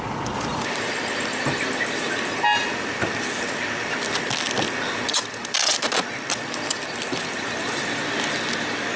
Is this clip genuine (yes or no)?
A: yes